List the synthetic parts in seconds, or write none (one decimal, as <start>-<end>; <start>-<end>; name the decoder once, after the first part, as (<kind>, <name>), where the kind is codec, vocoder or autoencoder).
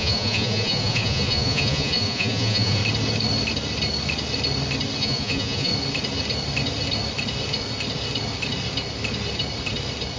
0.0-2.8 (vocoder, Vocos); 5.0-5.7